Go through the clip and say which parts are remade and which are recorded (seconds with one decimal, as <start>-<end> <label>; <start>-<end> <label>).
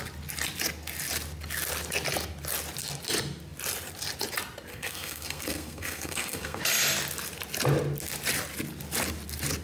0.0-4.7 recorded; 4.7-6.6 remade; 6.6-9.6 recorded